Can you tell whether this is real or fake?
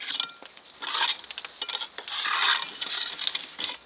real